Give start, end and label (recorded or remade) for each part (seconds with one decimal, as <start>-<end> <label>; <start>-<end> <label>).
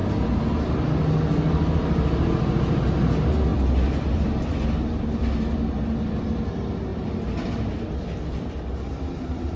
0.0-9.6 recorded